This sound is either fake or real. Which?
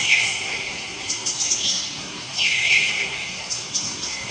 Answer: fake